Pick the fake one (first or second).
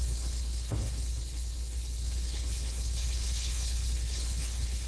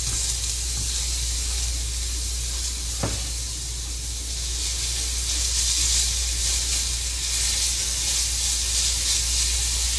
first